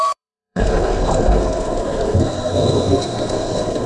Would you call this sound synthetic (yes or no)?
yes